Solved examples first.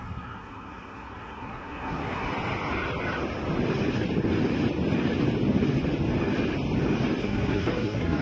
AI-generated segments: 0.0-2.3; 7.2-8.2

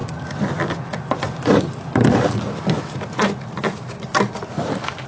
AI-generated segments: none

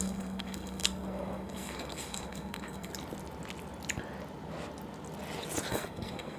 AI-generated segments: 0.0-2.9; 5.7-6.4

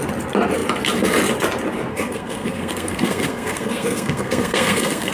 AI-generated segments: 1.9-5.1

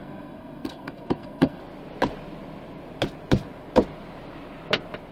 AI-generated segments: 0.0-1.6